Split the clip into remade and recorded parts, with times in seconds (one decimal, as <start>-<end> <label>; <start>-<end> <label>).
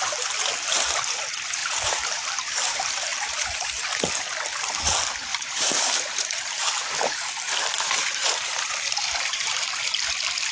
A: 0.0-1.6 recorded; 1.6-4.0 remade; 4.0-5.3 recorded; 5.3-10.1 remade; 10.1-10.5 recorded